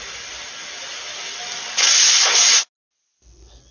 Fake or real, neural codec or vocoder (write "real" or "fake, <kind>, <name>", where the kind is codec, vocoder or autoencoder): real